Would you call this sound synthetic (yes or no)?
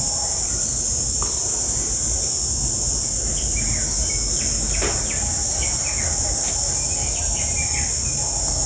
no